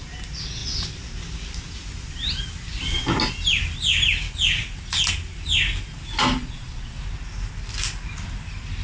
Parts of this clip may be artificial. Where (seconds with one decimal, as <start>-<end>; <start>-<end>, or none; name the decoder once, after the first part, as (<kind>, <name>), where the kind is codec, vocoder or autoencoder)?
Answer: 6.4-7.0 (vocoder, Vocos)